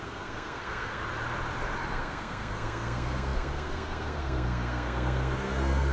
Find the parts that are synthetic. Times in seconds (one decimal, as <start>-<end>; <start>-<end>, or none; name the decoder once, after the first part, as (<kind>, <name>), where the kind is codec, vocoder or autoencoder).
0.0-1.0 (codec, SNAC); 1.9-5.9